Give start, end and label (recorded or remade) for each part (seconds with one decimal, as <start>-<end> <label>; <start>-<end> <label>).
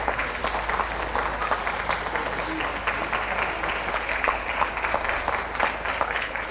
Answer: 0.0-0.4 remade; 0.4-3.9 recorded; 3.9-4.7 remade; 4.7-6.0 recorded; 6.0-6.5 remade